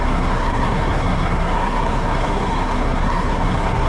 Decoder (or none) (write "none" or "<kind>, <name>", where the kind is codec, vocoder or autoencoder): codec, SNAC